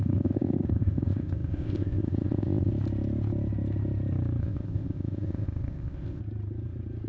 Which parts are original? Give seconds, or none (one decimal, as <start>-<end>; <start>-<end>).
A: 2.7-4.4; 6.2-7.1